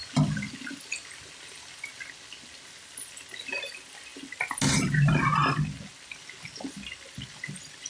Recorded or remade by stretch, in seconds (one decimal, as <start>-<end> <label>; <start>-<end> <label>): 0.0-7.9 recorded